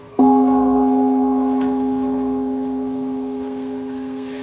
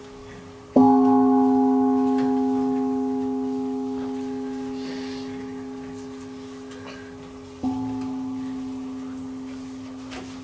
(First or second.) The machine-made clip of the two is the first